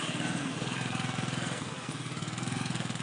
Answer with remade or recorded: remade